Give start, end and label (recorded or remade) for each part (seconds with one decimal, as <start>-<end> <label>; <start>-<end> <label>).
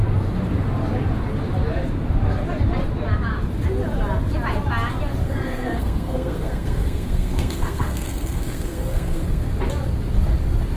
0.0-5.2 recorded; 5.2-9.5 remade; 9.5-10.8 recorded